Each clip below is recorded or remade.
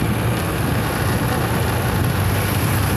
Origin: recorded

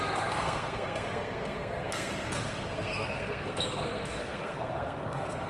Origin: remade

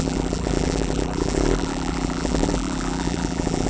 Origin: remade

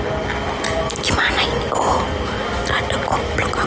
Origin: recorded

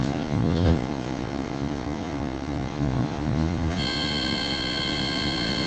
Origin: remade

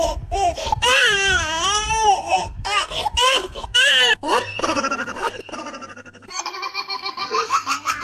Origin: remade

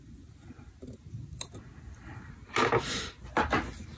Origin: recorded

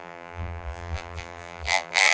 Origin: remade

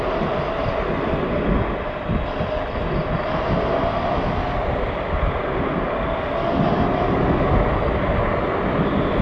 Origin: recorded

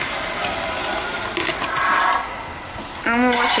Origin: recorded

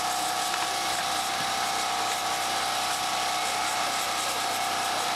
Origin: recorded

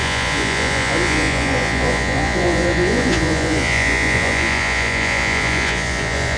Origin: remade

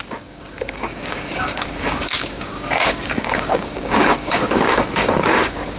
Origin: remade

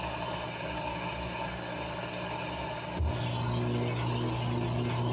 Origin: recorded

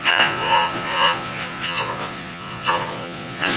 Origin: remade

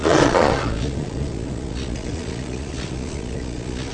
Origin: remade